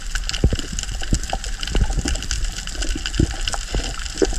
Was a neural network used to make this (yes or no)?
no